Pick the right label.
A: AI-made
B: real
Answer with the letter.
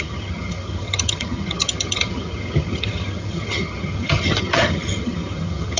A